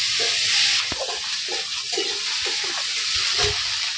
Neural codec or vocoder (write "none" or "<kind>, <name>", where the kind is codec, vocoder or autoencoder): none